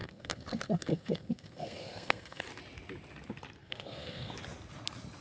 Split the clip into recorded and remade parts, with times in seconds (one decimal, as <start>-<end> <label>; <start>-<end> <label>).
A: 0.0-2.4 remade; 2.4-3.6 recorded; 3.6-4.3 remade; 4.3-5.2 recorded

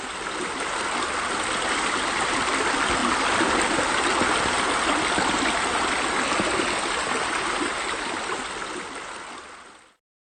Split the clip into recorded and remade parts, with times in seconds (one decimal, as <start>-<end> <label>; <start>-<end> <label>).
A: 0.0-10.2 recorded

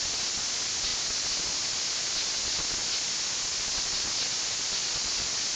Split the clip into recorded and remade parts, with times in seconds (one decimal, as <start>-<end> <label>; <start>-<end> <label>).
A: 0.0-5.6 recorded

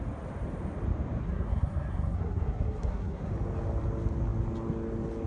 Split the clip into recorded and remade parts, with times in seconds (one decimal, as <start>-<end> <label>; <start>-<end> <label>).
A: 0.0-1.2 recorded; 1.2-3.3 remade; 3.3-5.3 recorded